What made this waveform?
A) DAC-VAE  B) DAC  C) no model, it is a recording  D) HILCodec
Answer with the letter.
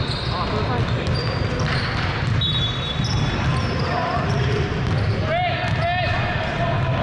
C